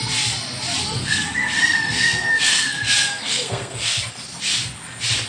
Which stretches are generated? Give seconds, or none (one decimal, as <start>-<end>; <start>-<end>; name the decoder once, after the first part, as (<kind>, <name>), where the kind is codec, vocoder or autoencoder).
1.0-4.0 (codec, SNAC)